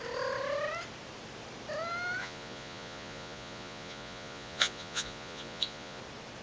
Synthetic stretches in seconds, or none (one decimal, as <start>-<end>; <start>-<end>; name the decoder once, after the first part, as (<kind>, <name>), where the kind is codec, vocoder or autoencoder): 2.2-6.0 (vocoder, Vocos)